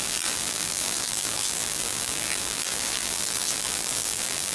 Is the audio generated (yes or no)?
yes